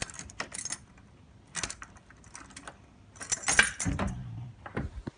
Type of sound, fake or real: real